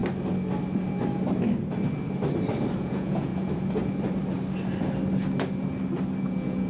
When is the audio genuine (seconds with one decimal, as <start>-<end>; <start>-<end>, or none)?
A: 0.0-2.8; 3.3-6.2